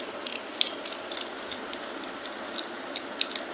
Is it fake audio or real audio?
real